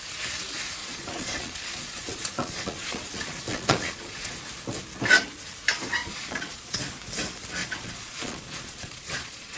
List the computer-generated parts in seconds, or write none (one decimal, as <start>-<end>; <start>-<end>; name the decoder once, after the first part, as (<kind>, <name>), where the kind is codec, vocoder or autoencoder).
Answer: 0.8-4.4 (vocoder, Vocos); 6.0-6.8; 7.6-9.6